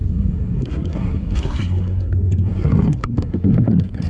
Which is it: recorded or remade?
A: remade